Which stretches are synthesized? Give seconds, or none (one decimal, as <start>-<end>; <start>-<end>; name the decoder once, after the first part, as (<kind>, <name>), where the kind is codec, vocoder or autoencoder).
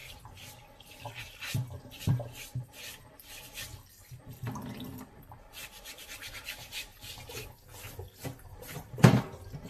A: 0.0-3.7 (vocoder, BigVGAN v2); 5.4-6.9; 8.6-9.7